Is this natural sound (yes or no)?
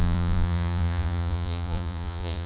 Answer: no